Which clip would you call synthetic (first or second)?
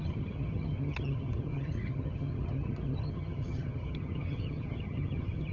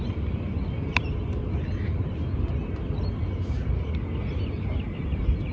first